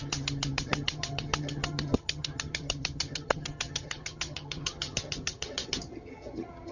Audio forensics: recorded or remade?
remade